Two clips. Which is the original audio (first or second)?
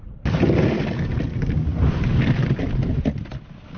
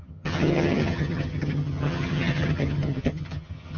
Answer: first